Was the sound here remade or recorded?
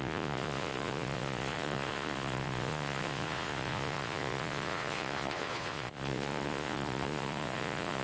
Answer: remade